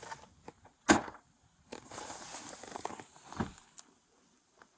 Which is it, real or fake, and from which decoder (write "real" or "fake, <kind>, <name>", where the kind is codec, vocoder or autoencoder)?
real